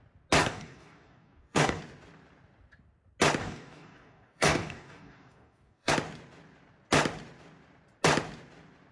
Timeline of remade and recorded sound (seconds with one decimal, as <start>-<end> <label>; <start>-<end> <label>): 0.0-0.4 recorded; 0.4-1.8 remade; 1.8-3.4 recorded; 3.4-5.9 remade; 5.9-8.9 recorded